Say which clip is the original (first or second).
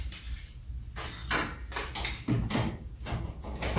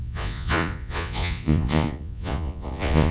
first